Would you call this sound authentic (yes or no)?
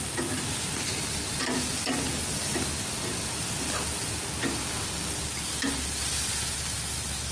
yes